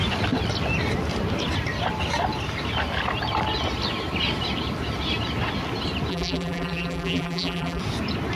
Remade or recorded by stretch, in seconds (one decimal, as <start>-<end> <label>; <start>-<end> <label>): 0.0-6.1 recorded; 6.1-7.8 remade; 7.8-8.4 recorded